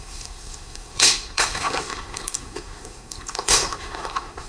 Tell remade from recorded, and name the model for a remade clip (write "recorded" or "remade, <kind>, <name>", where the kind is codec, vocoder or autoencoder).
remade, codec, SNAC